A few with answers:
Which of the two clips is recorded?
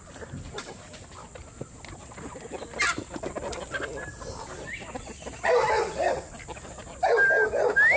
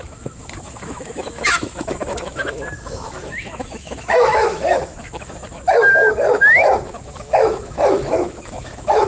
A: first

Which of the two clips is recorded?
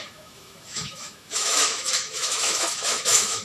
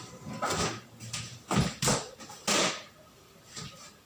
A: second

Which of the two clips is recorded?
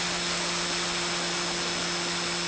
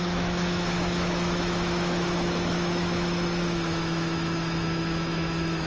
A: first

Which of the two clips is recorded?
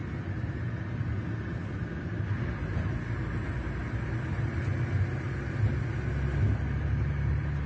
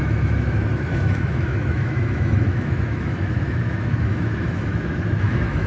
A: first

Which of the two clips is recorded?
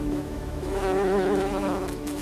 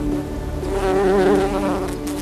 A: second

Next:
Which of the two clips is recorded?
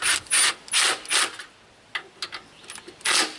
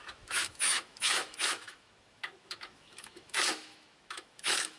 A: first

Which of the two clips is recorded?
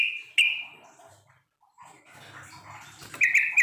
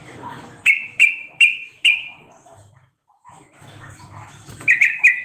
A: first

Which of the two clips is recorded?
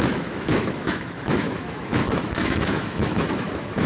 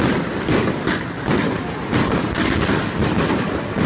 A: second